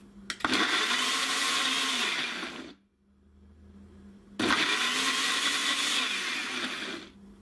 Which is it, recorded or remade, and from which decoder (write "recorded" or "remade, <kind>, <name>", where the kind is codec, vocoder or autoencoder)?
recorded